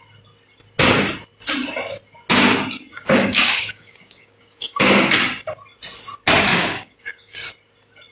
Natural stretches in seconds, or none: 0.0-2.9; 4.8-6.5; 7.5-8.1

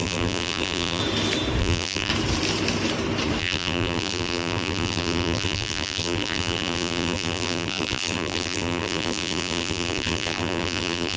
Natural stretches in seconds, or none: 1.0-1.6; 2.1-3.4

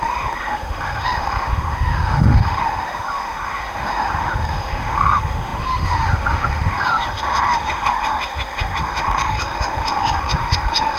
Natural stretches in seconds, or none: none

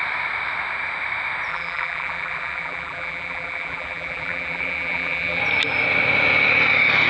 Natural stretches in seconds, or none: 0.0-1.5; 5.4-7.1